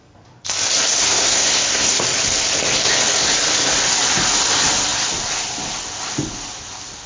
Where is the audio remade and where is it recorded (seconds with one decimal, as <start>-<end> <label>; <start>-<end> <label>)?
0.0-1.0 recorded; 1.0-2.0 remade; 2.0-7.1 recorded